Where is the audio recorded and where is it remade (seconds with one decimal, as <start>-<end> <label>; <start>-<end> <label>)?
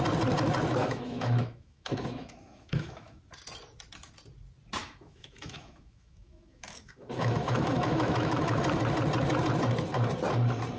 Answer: 0.0-0.8 recorded; 0.8-3.2 remade; 3.2-4.8 recorded; 4.8-8.6 remade; 8.6-10.8 recorded